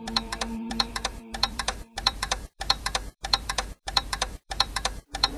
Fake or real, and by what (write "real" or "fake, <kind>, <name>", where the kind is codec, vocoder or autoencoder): fake, vocoder, BigVGAN v2